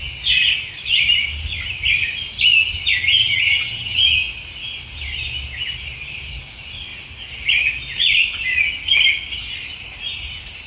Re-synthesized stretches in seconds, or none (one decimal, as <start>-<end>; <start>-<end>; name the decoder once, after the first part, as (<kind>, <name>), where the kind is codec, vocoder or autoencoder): 3.1-4.0 (vocoder, HiFi-GAN)